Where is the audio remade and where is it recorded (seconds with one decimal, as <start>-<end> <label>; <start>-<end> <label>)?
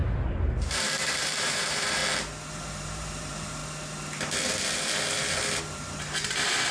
0.0-2.0 remade; 2.0-2.5 recorded; 2.5-3.6 remade; 3.6-5.6 recorded; 5.6-6.7 remade